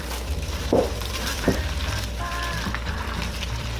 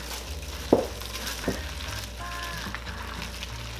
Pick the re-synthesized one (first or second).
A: first